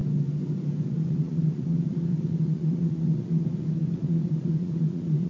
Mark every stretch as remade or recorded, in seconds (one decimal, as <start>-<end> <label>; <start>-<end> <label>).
0.0-0.9 recorded; 0.9-5.3 remade